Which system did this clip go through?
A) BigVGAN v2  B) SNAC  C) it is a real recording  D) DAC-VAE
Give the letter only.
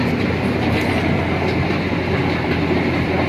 C